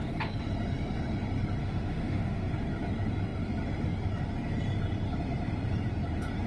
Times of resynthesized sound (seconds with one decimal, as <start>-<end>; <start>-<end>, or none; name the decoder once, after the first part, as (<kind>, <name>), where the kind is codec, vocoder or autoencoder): 1.6-2.5 (autoencoder, DAC-VAE)